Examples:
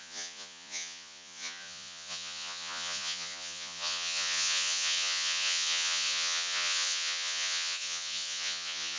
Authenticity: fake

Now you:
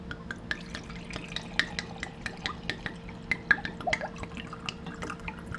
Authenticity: real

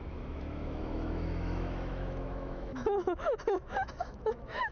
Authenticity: fake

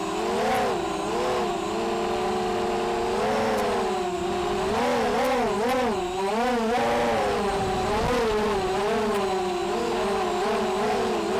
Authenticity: real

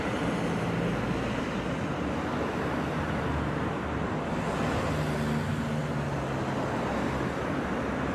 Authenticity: real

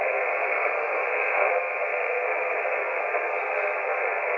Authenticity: fake